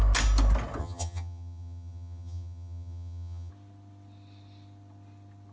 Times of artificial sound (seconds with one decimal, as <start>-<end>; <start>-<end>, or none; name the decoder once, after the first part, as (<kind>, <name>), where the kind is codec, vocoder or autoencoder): 0.8-3.5 (vocoder, HiFi-GAN)